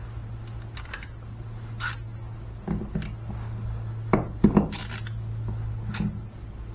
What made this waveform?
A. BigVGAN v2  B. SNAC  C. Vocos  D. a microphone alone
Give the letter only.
D